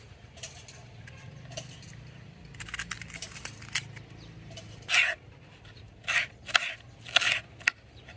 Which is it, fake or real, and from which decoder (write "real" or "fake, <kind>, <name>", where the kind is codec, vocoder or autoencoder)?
real